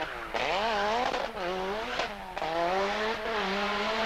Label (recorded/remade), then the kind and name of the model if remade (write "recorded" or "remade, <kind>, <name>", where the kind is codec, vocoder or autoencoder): recorded